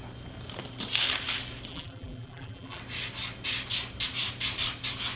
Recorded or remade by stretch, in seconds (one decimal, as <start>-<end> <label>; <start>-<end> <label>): 0.0-1.7 recorded; 1.7-2.8 remade; 2.8-5.2 recorded